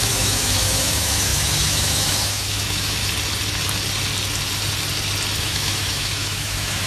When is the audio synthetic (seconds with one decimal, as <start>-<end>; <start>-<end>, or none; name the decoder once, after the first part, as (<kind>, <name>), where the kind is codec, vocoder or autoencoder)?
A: 0.0-3.0 (autoencoder, DAC-VAE); 5.4-6.9